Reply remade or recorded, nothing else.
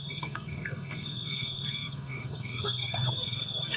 remade